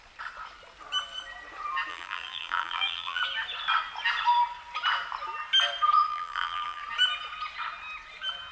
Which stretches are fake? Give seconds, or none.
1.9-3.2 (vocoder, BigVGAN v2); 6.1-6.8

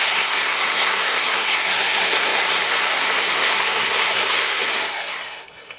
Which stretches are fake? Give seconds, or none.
0.0-5.8 (codec, SNAC)

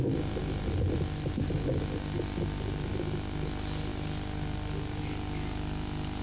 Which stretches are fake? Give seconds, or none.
none

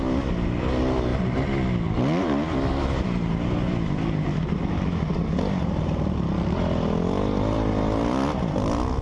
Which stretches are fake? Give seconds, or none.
none